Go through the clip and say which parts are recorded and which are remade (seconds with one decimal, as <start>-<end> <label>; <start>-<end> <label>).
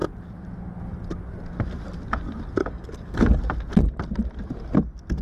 0.0-2.6 recorded; 2.6-3.4 remade; 3.4-5.2 recorded